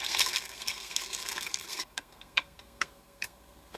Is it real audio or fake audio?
fake